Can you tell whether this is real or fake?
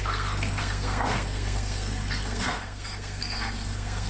fake